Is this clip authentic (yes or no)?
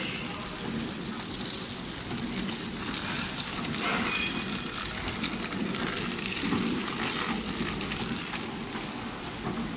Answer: yes